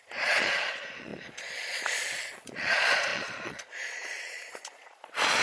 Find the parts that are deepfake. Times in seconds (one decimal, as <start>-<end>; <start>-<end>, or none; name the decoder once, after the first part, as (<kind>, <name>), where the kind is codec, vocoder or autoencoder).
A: 0.0-5.4 (vocoder, Vocos)